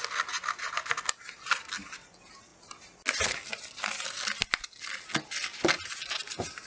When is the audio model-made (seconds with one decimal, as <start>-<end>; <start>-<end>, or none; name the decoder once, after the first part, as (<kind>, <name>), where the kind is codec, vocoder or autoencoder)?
none